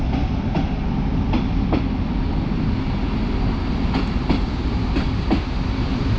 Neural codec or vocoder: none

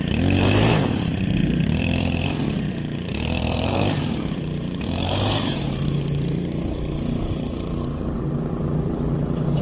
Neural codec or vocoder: vocoder, BigVGAN v2